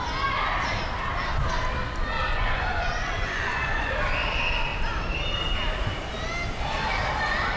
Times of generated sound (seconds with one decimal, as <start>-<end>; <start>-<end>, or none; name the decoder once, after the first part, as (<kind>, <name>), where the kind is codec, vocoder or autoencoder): 2.3-3.9 (vocoder, Vocos)